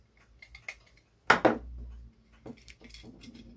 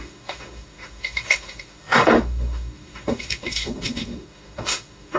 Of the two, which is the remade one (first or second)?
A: second